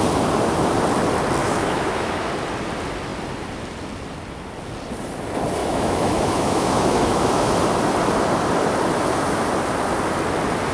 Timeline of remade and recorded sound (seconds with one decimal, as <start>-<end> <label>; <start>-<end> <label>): 0.0-1.4 recorded; 1.4-2.3 remade; 2.3-5.6 recorded; 5.6-7.5 remade; 7.5-10.7 recorded